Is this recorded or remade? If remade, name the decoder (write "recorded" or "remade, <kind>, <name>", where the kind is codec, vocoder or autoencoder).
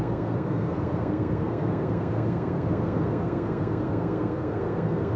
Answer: remade, codec, SNAC